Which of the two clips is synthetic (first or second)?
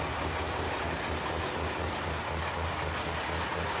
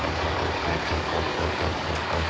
second